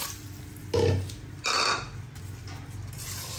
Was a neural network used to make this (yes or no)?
no